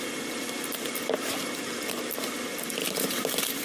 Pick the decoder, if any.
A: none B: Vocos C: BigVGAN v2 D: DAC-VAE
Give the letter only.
A